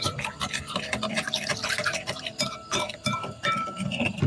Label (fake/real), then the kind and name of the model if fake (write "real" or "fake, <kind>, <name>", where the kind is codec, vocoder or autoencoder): fake, vocoder, BigVGAN v2